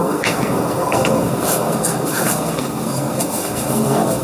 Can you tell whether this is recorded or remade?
remade